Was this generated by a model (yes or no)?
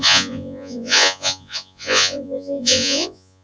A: yes